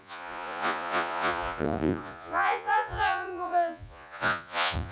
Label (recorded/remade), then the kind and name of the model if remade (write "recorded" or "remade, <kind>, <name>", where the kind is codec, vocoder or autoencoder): remade, vocoder, Vocos